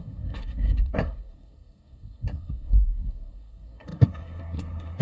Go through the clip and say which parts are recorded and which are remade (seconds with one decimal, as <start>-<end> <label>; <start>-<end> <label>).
0.0-5.0 remade